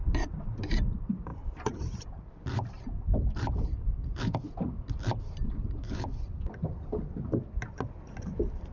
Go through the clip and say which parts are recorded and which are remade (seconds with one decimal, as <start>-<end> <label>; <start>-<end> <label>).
0.0-8.7 remade